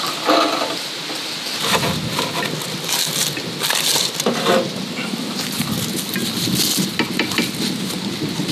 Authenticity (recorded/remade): recorded